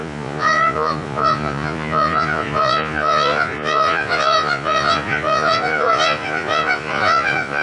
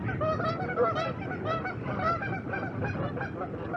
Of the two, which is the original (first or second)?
second